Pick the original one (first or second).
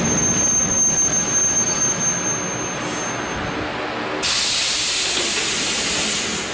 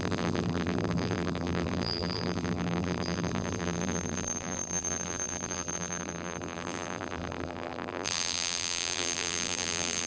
first